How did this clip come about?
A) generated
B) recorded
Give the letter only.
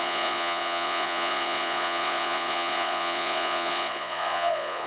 A